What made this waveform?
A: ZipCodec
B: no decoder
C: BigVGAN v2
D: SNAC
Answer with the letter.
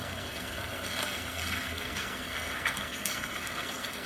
D